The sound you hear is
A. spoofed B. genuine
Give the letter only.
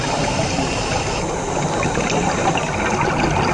B